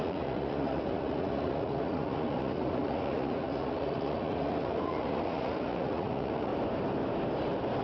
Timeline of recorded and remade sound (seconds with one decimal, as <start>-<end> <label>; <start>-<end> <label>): 0.0-6.5 remade; 6.5-7.8 recorded